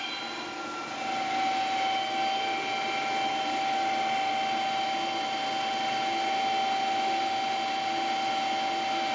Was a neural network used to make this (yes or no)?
no